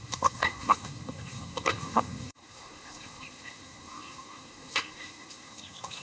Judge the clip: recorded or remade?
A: remade